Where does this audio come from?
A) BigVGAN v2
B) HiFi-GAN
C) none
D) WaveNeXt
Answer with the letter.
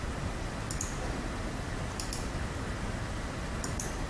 C